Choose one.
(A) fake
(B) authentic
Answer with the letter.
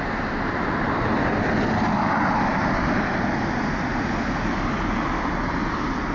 B